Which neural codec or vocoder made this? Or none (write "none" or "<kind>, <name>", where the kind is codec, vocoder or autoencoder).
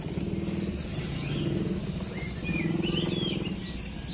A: none